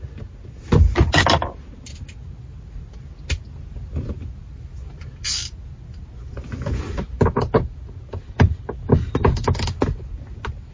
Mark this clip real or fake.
real